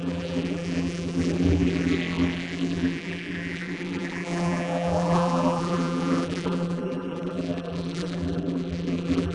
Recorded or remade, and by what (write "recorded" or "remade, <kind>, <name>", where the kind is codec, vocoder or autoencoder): remade, vocoder, BigVGAN v2